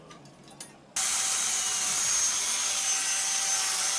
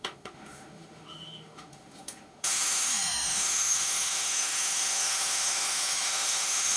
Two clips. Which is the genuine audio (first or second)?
first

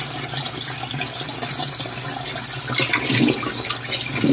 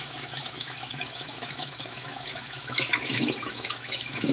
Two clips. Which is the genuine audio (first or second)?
first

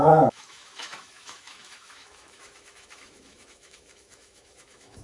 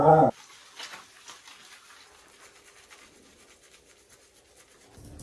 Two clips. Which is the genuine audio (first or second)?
second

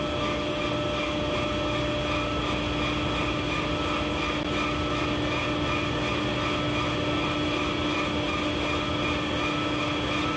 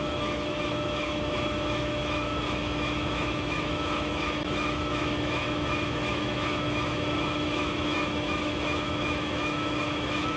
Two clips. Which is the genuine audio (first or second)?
first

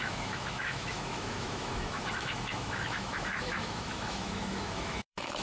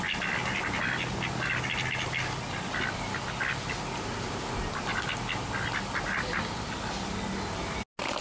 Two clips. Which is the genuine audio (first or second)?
second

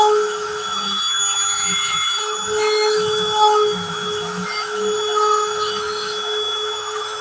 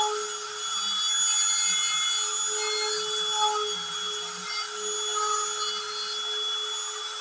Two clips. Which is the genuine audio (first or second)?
second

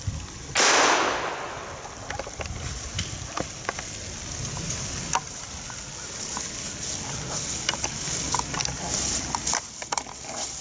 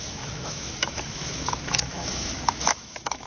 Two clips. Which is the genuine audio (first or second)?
first